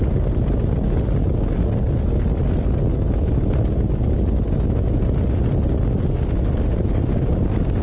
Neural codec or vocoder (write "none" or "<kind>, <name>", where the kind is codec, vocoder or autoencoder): none